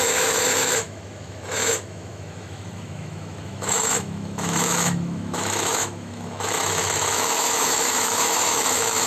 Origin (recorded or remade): remade